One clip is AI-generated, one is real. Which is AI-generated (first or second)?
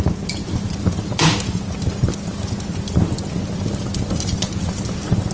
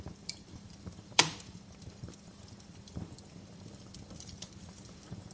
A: second